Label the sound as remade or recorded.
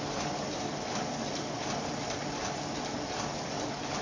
recorded